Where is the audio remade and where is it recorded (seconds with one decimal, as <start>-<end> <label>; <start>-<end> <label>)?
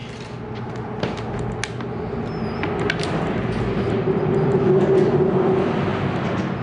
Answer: 0.0-6.6 recorded